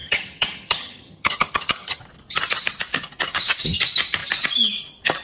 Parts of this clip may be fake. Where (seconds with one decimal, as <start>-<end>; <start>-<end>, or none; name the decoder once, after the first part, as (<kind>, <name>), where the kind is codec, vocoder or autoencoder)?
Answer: 0.0-2.0 (vocoder, HiFi-GAN)